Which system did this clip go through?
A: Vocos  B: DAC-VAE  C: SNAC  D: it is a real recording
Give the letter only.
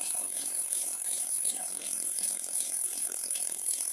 C